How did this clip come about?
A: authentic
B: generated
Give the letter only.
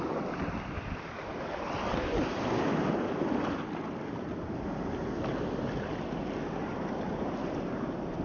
A